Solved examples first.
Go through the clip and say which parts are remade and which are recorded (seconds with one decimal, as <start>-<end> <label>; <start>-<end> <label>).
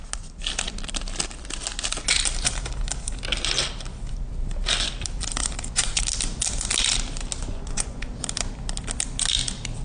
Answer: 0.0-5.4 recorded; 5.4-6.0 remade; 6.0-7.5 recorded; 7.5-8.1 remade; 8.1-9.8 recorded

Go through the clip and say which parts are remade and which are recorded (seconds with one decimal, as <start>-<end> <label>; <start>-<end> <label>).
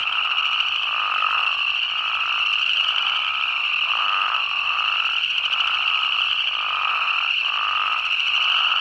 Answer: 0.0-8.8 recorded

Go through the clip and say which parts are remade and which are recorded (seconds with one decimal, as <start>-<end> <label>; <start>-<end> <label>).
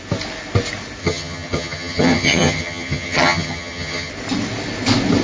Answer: 0.0-1.0 recorded; 1.0-4.1 remade; 4.1-5.2 recorded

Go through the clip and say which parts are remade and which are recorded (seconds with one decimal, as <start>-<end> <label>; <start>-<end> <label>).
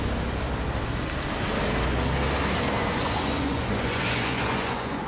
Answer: 0.0-2.8 recorded; 2.8-5.1 remade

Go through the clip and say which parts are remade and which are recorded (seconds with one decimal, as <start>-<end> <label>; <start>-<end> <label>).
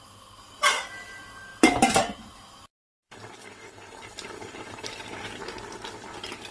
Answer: 0.0-1.5 recorded; 1.5-5.4 remade; 5.4-6.5 recorded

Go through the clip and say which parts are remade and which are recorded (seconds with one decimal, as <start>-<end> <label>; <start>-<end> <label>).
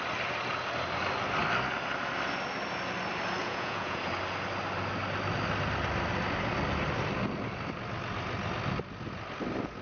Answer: 0.0-3.4 recorded; 3.4-4.0 remade; 4.0-9.8 recorded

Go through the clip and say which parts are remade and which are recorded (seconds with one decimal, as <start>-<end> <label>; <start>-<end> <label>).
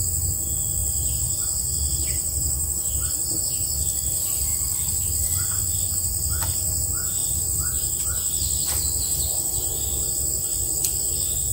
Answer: 0.0-0.8 recorded; 0.8-3.4 remade; 3.4-4.5 recorded; 4.5-5.9 remade; 5.9-7.2 recorded; 7.2-8.0 remade; 8.0-11.5 recorded